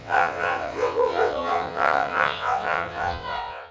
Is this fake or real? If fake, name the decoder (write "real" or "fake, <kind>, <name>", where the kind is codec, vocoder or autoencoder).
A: fake, vocoder, WaveNeXt